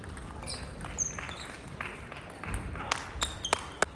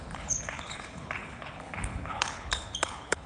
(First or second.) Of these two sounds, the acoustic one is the first